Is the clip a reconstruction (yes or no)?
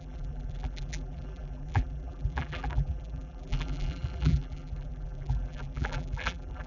yes